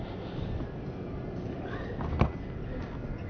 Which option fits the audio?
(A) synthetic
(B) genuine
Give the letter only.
B